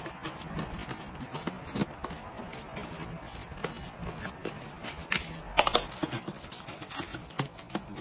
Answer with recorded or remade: recorded